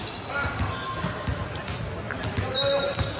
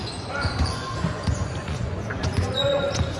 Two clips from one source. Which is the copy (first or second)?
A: second